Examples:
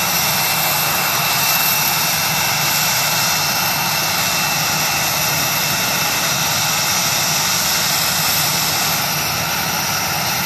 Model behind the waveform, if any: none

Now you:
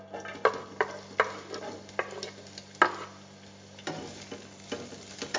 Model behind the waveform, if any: none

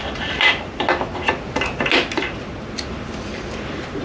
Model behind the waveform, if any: none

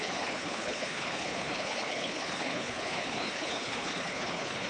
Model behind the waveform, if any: codec, HILCodec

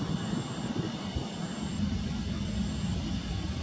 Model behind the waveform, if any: none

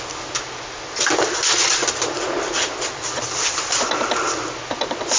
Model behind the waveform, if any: none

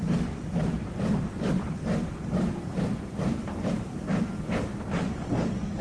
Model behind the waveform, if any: none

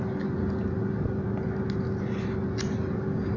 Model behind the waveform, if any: none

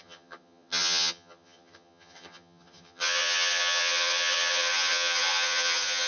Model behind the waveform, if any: vocoder, HiFi-GAN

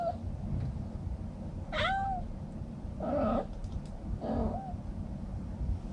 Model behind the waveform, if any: none